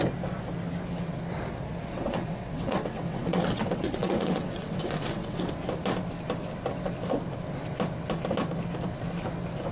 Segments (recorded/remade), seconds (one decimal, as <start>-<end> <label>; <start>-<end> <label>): 0.0-1.9 recorded; 1.9-5.5 remade; 5.5-9.7 recorded